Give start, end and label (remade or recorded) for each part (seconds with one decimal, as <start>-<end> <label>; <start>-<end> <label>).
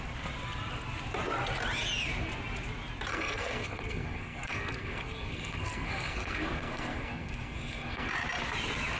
0.0-3.1 recorded; 3.1-8.1 remade; 8.1-9.0 recorded